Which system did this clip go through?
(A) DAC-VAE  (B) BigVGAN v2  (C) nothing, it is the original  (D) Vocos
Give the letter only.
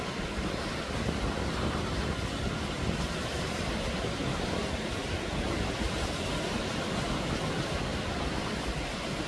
C